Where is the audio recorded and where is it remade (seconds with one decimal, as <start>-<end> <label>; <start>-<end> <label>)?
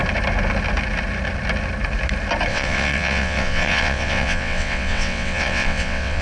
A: 0.0-2.5 recorded; 2.5-6.2 remade